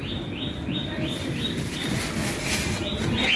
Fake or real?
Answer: real